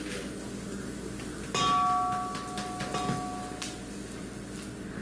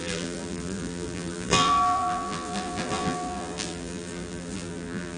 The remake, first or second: second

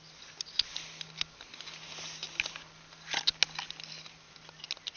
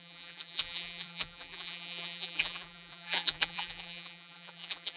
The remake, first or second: second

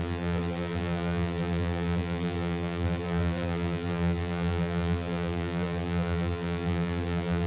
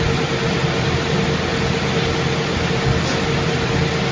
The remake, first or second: first